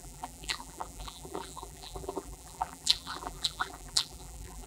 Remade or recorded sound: remade